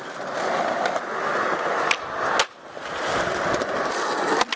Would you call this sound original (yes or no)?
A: yes